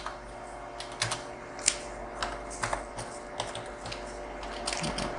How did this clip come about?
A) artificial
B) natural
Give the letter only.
B